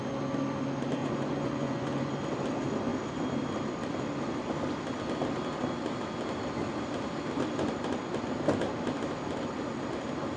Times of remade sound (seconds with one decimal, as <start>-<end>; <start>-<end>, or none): 1.0-2.1